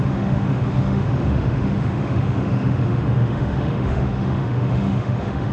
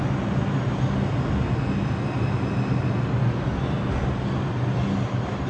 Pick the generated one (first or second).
first